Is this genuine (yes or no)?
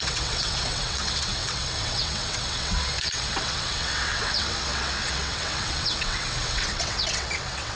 no